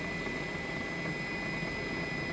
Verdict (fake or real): real